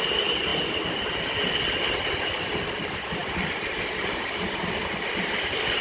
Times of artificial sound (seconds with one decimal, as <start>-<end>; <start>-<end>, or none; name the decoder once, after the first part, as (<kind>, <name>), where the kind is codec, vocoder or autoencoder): none